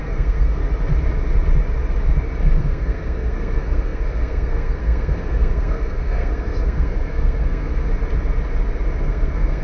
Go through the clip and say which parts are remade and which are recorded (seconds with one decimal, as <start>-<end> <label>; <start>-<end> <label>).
0.0-0.6 remade; 0.6-2.6 recorded; 2.6-7.9 remade; 7.9-9.0 recorded; 9.0-9.6 remade